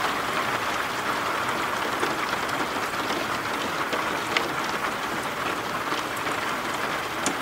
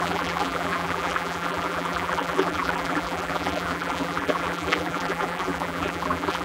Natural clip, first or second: first